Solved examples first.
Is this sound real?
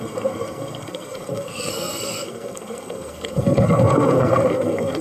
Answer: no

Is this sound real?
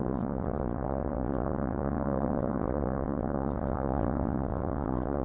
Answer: no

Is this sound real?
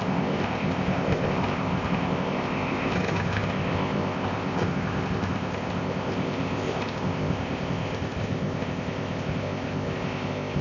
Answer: no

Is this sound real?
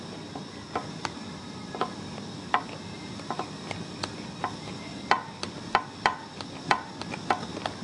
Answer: no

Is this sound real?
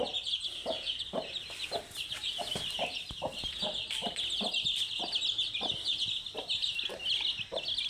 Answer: yes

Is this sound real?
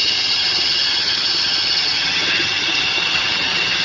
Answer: no